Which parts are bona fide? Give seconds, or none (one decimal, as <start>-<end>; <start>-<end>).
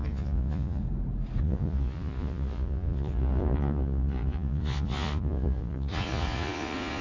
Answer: 0.8-1.4